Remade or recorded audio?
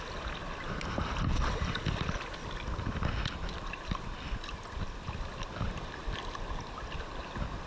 recorded